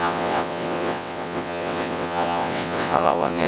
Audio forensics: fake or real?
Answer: fake